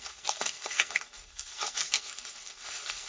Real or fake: fake